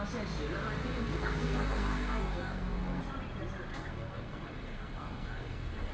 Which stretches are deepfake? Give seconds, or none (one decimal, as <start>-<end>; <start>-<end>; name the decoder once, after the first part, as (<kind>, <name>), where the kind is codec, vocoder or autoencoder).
0.8-3.0 (codec, SNAC); 3.7-5.9